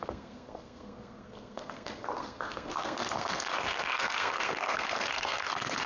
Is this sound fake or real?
fake